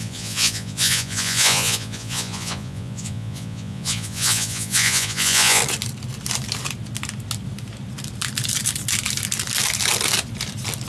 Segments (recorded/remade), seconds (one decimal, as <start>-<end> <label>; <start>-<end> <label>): 0.0-5.6 remade; 5.6-10.9 recorded